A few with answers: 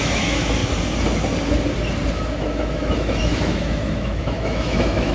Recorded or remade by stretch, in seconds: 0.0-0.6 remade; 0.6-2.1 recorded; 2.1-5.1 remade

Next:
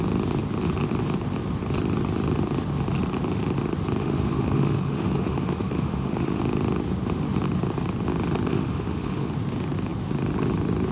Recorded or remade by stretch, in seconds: 0.0-4.0 recorded; 4.0-6.4 remade; 6.4-8.5 recorded; 8.5-9.3 remade; 9.3-10.9 recorded

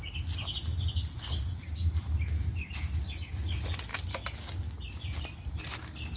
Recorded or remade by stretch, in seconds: 0.0-6.2 recorded

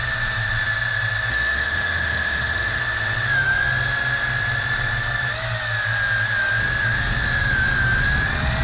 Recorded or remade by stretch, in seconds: 0.0-1.3 recorded; 1.3-2.8 remade; 2.8-8.6 recorded

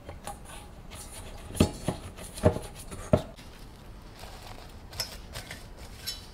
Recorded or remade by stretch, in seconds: 0.0-6.3 recorded

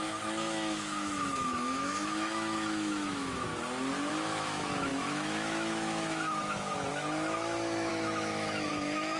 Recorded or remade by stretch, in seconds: 0.0-3.5 remade; 3.5-4.1 recorded; 4.1-9.2 remade